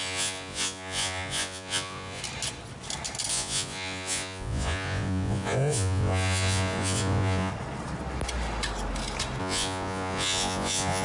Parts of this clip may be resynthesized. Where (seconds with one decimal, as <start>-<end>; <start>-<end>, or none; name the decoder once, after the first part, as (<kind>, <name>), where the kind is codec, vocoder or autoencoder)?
0.0-2.2 (vocoder, Vocos); 3.3-7.5; 9.4-11.0